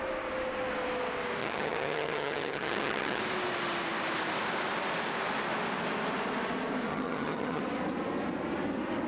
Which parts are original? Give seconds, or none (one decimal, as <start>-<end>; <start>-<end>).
0.0-1.4; 3.2-6.9; 7.6-9.1